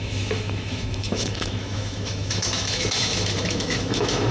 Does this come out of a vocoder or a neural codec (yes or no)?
yes